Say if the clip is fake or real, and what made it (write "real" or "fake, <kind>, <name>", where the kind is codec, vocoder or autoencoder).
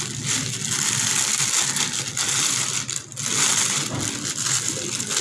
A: real